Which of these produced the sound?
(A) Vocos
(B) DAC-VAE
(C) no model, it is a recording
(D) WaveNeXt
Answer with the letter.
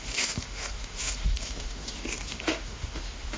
B